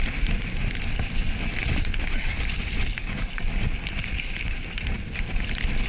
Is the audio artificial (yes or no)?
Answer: no